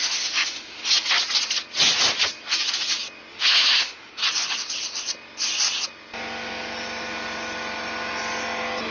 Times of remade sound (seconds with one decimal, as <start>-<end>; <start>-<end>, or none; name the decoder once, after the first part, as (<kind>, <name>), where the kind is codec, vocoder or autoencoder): 0.0-0.8 (autoencoder, DAC-VAE); 3.3-4.2

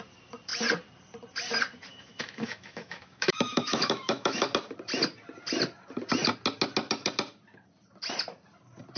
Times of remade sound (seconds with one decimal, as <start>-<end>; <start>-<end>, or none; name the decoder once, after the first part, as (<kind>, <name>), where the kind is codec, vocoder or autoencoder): 1.9-4.5 (autoencoder, DAC-VAE)

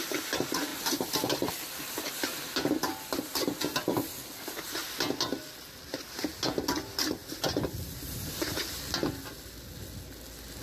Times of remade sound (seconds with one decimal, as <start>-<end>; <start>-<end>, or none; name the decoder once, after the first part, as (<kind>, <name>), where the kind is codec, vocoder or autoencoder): none

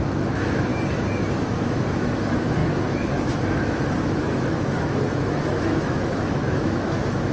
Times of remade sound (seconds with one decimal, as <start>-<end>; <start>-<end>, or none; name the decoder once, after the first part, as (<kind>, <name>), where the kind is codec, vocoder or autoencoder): 0.0-0.7 (autoencoder, DAC-VAE); 1.4-7.3

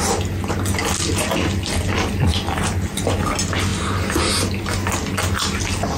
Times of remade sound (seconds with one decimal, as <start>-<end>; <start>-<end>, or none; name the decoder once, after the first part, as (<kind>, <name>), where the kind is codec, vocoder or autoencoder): none